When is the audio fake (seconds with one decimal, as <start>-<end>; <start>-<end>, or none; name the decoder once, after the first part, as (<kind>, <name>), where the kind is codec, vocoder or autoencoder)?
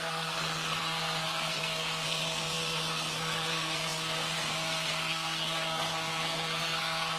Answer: 0.0-7.2 (codec, SNAC)